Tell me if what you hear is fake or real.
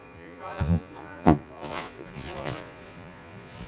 fake